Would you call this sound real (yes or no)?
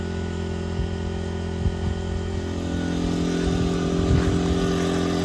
yes